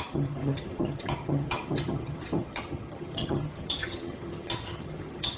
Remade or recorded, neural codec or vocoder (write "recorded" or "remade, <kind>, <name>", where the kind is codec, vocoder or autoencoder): remade, vocoder, HiFi-GAN